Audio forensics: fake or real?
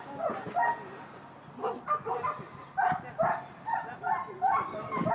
real